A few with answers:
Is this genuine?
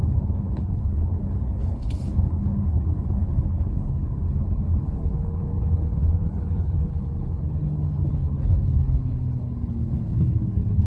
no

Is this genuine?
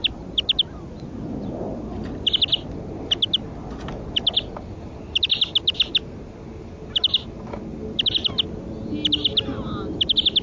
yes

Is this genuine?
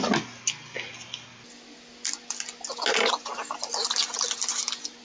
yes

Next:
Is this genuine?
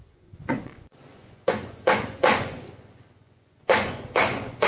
no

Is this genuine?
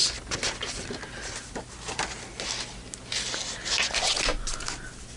yes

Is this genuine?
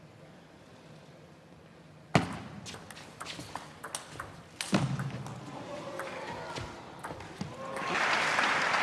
yes